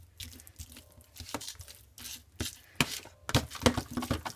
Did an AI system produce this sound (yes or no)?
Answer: no